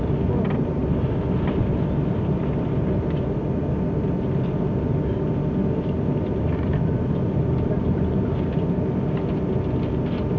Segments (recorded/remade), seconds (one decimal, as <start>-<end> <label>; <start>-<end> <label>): 0.0-0.8 recorded; 0.8-3.6 remade; 3.6-6.1 recorded; 6.1-8.1 remade; 8.1-10.4 recorded